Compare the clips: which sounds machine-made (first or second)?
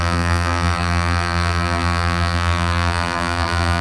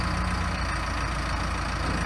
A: first